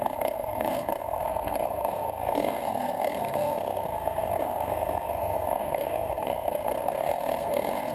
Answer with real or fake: fake